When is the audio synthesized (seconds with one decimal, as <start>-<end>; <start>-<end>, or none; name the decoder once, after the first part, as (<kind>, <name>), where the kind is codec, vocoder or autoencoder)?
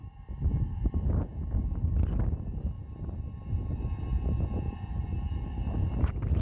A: 4.1-4.9 (vocoder, Vocos)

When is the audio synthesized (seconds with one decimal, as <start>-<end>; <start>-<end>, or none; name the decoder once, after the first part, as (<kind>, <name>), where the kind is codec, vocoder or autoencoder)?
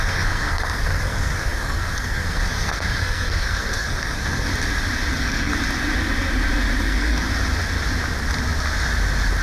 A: 0.0-4.5 (codec, SNAC); 5.1-5.5; 6.8-7.3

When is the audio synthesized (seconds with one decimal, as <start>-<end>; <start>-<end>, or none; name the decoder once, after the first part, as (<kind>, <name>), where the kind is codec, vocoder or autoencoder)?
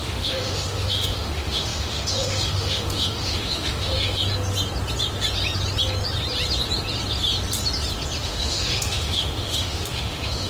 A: 0.0-4.2 (autoencoder, DAC-VAE); 8.2-10.5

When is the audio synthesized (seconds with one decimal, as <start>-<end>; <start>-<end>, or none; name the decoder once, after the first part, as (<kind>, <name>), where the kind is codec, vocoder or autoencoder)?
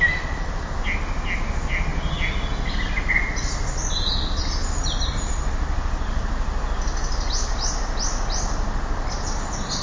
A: none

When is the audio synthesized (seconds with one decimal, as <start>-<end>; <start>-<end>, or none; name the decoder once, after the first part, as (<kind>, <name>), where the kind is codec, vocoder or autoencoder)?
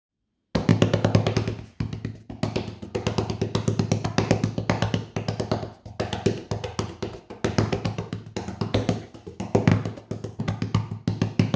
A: none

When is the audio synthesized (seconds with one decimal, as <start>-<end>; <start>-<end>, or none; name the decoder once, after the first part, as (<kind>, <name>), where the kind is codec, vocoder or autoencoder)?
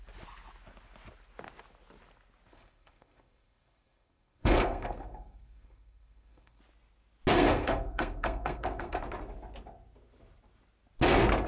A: 2.5-6.6 (codec, SNAC); 7.3-9.0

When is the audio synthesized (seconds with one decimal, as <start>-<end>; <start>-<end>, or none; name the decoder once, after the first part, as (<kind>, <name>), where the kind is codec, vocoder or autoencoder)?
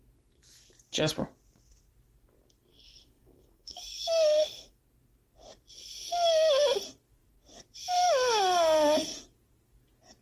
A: 2.7-4.8 (codec, SNAC)